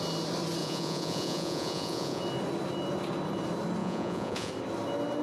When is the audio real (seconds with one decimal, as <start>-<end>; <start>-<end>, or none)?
0.0-0.6; 2.2-3.8; 4.5-5.2